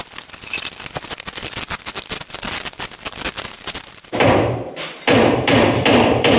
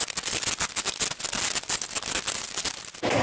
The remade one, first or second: first